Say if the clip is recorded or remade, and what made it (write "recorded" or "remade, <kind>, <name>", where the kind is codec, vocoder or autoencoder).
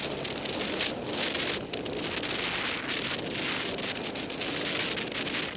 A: recorded